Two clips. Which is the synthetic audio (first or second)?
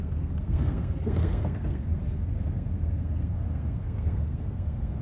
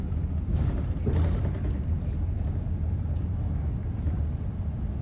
first